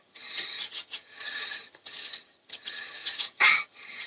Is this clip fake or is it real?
fake